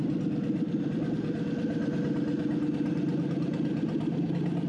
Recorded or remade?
recorded